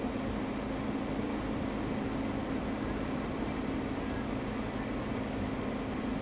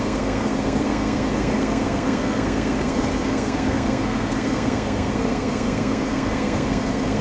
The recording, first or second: first